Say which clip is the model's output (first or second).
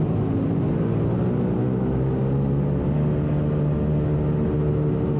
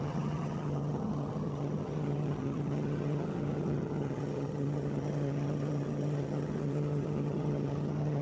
second